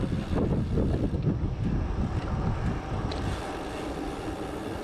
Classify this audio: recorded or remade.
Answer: recorded